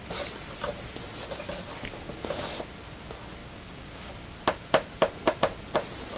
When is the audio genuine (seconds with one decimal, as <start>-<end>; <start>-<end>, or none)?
0.0-3.4; 4.1-6.2